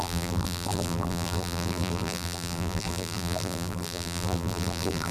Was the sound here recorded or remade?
remade